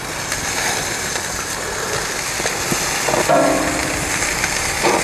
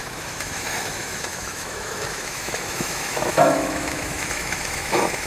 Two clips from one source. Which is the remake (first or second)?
second